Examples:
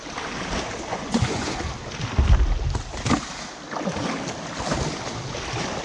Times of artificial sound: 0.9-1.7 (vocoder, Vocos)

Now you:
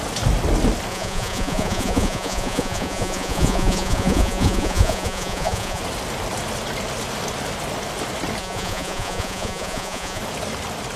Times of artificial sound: 0.9-5.8 (vocoder, Vocos); 8.4-10.2

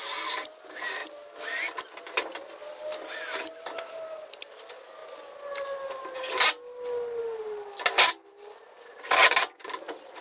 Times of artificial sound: none

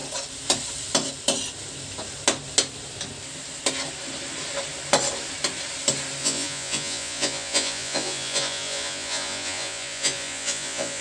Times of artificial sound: 6.2-11.0 (vocoder, Vocos)

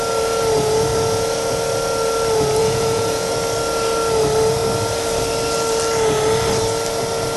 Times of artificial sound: 2.6-3.3 (vocoder, Vocos)

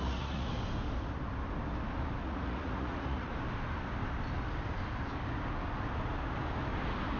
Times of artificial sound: 0.0-0.5 (vocoder, Vocos); 2.2-3.3